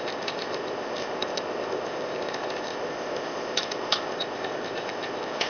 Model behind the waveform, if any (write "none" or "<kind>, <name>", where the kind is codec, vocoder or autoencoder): codec, ZipCodec